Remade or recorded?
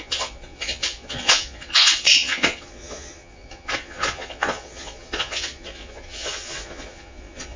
remade